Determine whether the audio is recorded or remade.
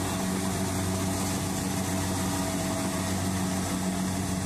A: recorded